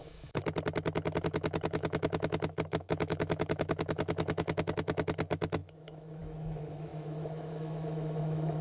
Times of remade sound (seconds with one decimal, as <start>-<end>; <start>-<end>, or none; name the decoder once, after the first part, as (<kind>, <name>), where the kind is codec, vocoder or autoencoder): 0.0-0.4 (autoencoder, DAC-VAE); 1.2-8.6